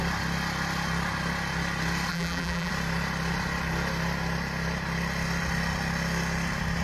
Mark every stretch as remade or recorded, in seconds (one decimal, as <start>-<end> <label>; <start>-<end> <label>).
0.0-2.1 recorded; 2.1-2.7 remade; 2.7-6.8 recorded